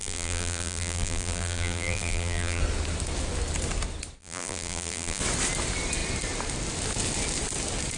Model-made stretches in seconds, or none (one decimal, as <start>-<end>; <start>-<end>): 0.0-2.6; 4.2-5.2